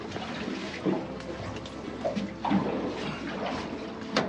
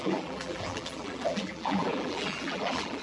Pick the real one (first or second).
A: first